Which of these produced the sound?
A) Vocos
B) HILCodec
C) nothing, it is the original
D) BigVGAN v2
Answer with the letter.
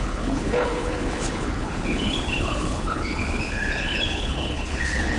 B